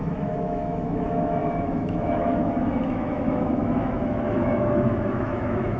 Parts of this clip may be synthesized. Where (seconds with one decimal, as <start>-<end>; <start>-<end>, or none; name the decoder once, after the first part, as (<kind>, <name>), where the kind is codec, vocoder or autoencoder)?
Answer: 0.0-5.8 (autoencoder, DAC-VAE)